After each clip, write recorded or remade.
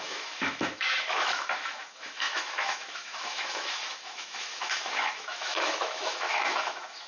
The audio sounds remade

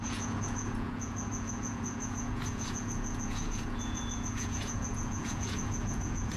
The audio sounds remade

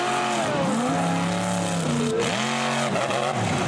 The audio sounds recorded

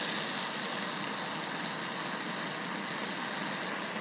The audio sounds recorded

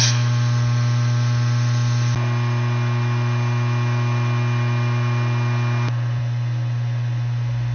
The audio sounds recorded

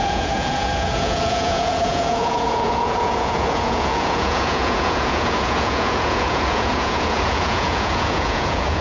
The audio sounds remade